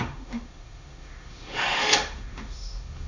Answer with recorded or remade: remade